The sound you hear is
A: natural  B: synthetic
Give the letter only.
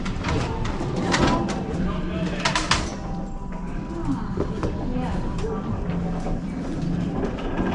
A